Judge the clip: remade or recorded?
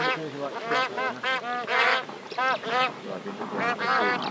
recorded